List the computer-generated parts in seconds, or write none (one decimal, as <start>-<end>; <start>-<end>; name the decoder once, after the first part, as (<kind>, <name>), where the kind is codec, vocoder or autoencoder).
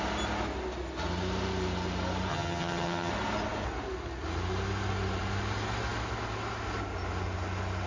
2.3-3.1 (vocoder, HiFi-GAN)